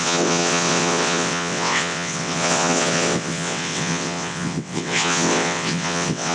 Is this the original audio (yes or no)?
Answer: no